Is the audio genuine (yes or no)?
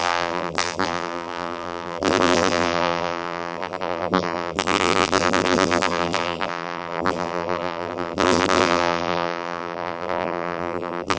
no